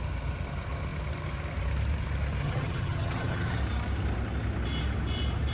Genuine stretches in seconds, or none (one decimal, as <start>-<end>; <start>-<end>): 0.0-2.4; 3.6-5.5